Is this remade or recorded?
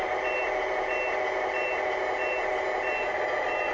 recorded